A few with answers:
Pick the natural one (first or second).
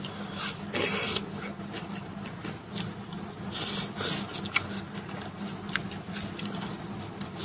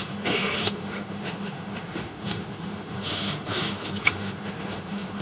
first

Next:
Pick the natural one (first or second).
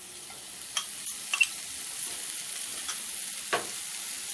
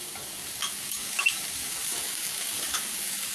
first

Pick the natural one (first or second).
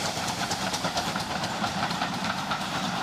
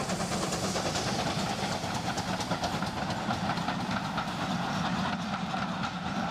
second